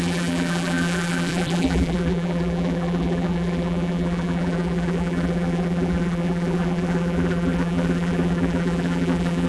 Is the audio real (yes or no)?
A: no